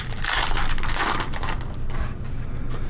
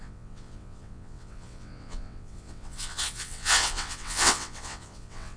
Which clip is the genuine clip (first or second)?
first